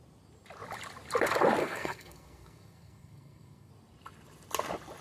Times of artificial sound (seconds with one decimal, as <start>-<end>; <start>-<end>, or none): 1.6-3.7